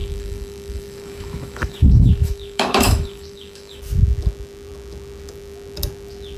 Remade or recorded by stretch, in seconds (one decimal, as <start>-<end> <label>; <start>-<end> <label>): 0.0-3.8 remade; 3.8-6.4 recorded